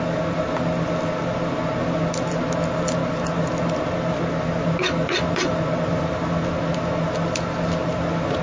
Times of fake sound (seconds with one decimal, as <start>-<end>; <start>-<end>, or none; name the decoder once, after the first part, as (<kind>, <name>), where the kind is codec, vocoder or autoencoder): none